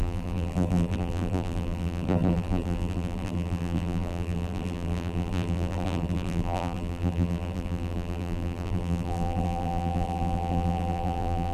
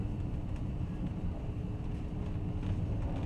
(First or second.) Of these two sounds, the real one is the second